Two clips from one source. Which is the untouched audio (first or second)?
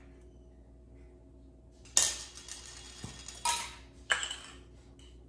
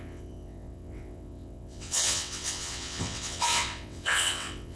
first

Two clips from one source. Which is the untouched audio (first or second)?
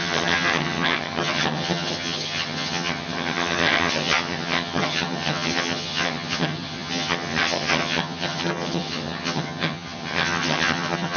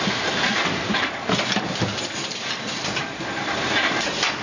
second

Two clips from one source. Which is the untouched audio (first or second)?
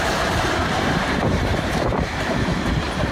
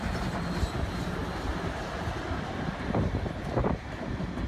second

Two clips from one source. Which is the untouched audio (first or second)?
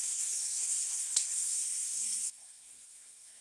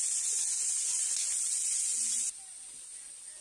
second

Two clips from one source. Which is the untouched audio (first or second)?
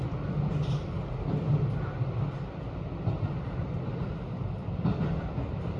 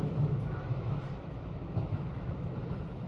first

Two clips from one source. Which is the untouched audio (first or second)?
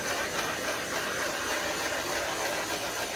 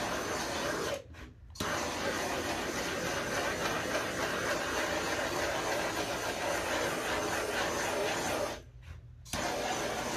second